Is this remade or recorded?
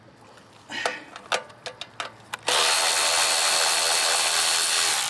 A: recorded